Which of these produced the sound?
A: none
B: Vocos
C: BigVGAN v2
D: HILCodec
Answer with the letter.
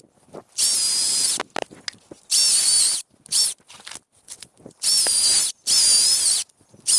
A